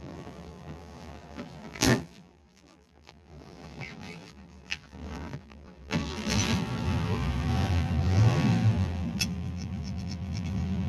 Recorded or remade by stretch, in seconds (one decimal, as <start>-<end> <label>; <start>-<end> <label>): 0.0-10.9 remade